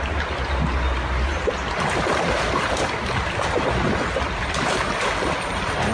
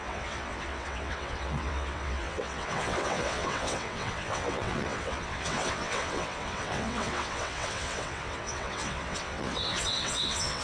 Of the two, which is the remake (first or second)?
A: second